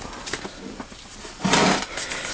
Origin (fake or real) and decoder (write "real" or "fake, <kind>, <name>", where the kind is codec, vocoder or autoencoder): real